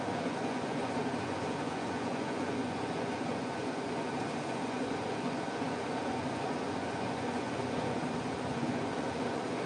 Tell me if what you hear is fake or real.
fake